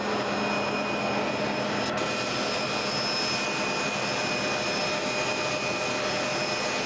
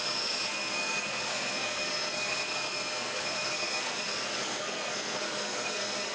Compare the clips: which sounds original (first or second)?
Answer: first